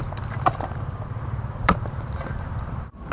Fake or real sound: fake